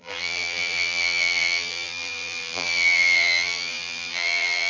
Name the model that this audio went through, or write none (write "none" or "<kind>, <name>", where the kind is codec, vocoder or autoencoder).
vocoder, BigVGAN v2